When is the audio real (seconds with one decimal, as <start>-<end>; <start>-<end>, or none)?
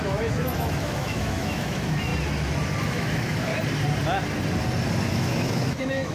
2.1-2.8; 3.5-5.1